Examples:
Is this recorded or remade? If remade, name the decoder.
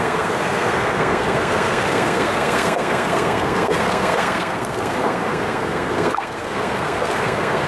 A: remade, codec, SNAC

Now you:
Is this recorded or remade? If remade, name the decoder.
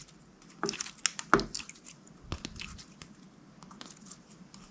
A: recorded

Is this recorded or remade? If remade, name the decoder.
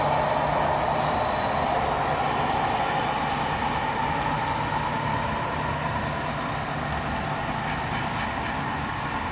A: recorded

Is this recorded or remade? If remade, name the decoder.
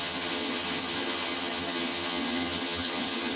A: remade, vocoder, HiFi-GAN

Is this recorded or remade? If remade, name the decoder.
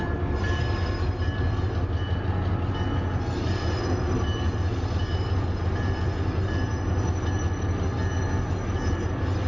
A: recorded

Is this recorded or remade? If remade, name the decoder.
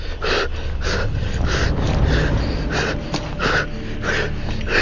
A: recorded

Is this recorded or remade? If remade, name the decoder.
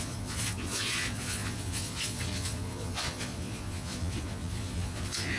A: remade, vocoder, Vocos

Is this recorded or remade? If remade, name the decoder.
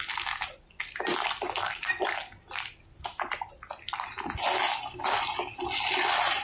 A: recorded